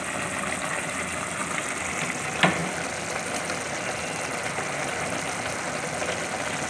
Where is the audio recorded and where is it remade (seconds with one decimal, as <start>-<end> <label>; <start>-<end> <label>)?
0.0-6.7 recorded